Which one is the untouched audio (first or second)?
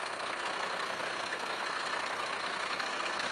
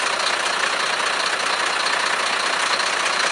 second